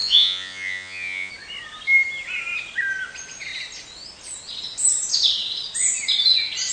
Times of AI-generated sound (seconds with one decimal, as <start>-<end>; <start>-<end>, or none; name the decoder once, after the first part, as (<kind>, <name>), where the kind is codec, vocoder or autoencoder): 0.0-1.3 (vocoder, Vocos)